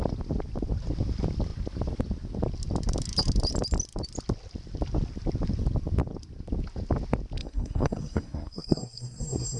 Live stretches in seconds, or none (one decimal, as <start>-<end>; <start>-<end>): 0.0-7.4